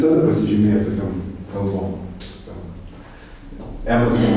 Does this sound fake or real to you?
real